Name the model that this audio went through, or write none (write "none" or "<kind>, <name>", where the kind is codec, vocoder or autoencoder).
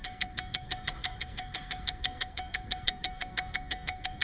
codec, SNAC